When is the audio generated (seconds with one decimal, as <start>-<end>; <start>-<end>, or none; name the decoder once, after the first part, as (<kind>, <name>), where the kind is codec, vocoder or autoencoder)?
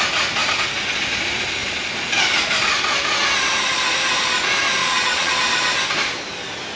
4.8-5.3 (vocoder, Vocos)